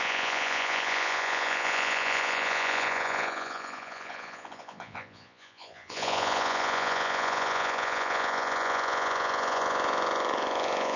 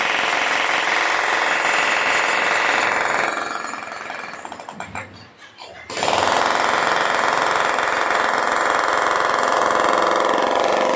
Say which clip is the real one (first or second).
second